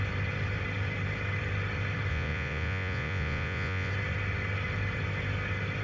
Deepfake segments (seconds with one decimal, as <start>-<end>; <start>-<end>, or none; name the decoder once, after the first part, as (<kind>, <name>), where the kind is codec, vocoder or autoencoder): 2.1-3.9 (vocoder, Vocos)